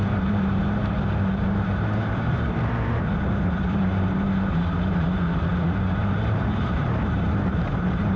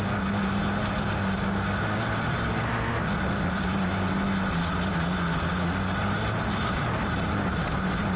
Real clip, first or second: second